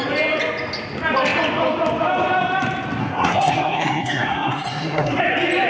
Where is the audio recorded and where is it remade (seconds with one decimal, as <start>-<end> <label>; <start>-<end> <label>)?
0.0-3.0 recorded; 3.0-5.2 remade; 5.2-5.7 recorded